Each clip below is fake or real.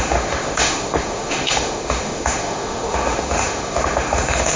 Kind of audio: fake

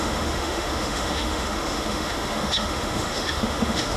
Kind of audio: fake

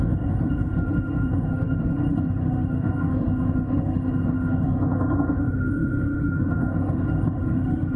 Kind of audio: fake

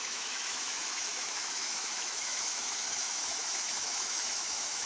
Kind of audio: fake